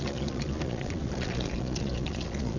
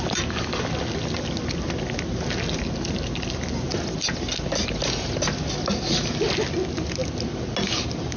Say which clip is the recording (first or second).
second